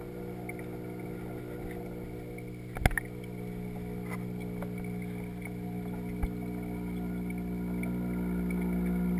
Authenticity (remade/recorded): recorded